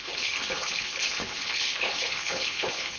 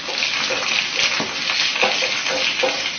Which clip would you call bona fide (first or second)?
second